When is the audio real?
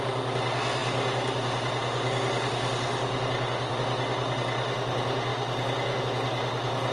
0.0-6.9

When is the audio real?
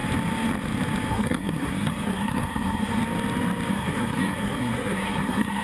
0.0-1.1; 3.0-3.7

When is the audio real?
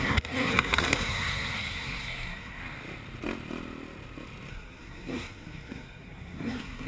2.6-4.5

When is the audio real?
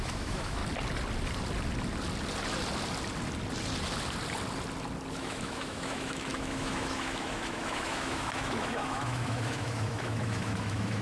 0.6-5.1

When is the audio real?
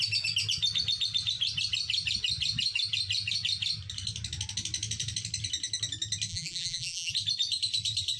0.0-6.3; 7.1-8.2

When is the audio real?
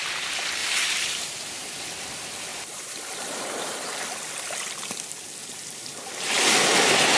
0.0-0.6; 1.8-2.5; 4.0-5.4; 6.3-7.2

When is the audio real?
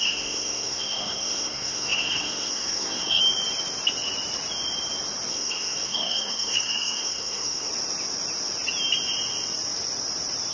3.2-5.3; 7.7-10.5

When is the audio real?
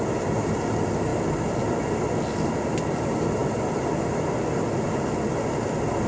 0.0-6.1